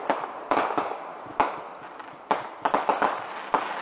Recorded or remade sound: recorded